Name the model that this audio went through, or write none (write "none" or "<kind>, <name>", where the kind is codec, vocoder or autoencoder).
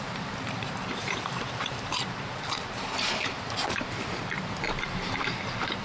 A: vocoder, BigVGAN v2